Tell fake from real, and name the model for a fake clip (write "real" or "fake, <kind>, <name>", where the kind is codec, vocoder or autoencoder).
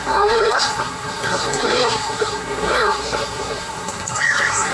fake, codec, SNAC